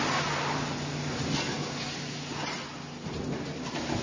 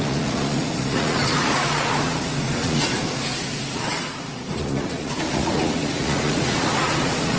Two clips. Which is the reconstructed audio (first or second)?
second